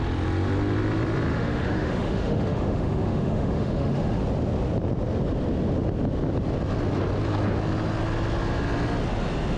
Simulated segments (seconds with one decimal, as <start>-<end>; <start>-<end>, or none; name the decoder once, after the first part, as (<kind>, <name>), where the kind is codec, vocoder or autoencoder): 1.3-4.2 (autoencoder, DAC-VAE)